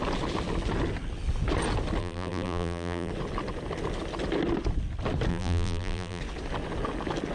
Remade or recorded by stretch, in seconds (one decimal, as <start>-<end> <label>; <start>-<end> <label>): 0.0-2.0 recorded; 2.0-3.1 remade; 3.1-5.3 recorded; 5.3-6.2 remade; 6.2-7.3 recorded